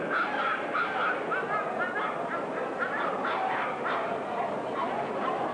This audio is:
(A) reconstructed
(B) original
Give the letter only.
B